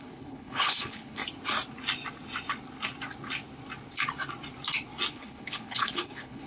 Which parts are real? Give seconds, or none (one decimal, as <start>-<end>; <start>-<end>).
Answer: 1.2-5.1